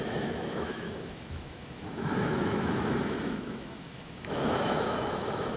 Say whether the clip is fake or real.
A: fake